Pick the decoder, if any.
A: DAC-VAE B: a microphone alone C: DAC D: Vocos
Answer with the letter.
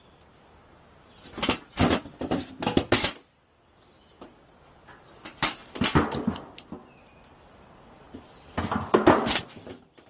B